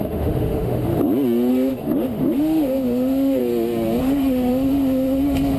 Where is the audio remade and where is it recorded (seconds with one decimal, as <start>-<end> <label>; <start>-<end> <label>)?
0.0-0.9 remade; 0.9-1.5 recorded; 1.5-3.4 remade; 3.4-4.0 recorded; 4.0-5.6 remade